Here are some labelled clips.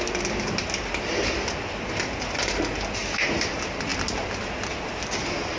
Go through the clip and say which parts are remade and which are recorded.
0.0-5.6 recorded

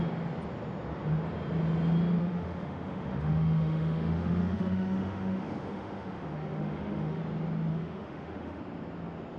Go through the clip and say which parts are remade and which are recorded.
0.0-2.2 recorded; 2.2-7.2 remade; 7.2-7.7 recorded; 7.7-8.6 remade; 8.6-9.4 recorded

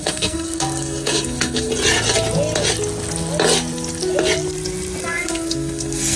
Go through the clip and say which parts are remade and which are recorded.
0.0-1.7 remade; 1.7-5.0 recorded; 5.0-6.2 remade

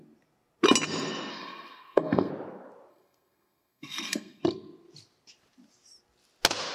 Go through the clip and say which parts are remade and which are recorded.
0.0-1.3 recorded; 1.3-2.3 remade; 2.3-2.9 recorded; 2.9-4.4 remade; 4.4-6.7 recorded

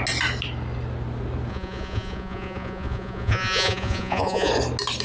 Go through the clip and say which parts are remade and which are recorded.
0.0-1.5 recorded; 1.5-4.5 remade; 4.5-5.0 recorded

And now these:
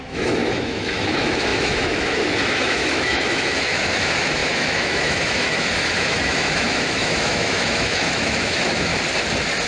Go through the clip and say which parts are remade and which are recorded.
0.0-8.9 remade; 8.9-9.7 recorded

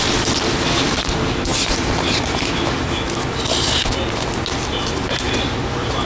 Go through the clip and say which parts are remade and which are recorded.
0.0-6.1 recorded